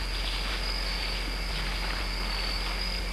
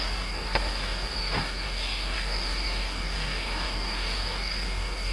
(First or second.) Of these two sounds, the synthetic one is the second